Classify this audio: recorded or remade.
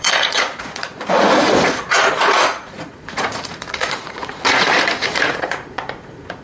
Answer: remade